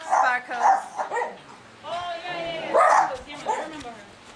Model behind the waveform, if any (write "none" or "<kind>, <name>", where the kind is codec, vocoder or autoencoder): none